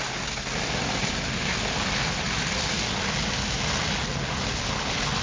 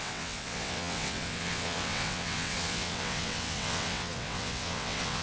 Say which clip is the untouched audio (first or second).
first